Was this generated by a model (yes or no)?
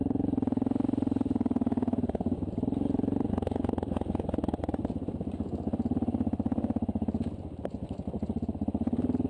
no